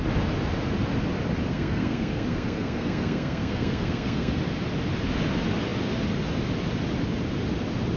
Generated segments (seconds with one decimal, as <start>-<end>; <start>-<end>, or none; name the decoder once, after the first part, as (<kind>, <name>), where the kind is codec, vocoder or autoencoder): 1.5-4.4 (codec, SNAC)